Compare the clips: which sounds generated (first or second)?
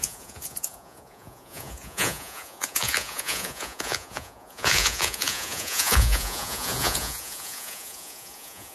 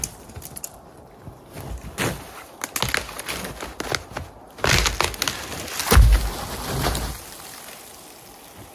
first